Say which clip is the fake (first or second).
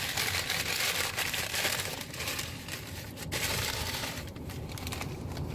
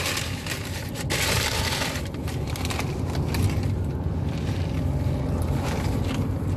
first